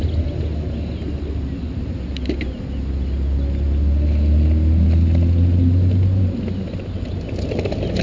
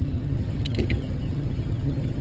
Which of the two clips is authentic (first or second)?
first